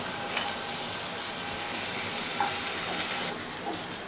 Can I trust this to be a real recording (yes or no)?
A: yes